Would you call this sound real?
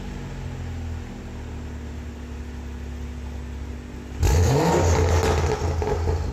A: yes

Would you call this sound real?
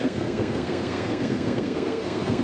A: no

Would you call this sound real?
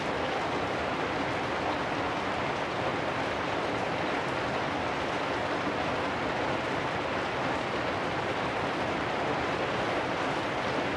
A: yes